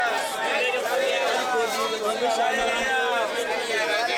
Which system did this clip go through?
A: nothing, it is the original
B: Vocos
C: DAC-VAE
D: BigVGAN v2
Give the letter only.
A